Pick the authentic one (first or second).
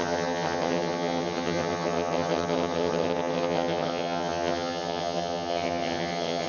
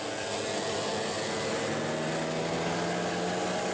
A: second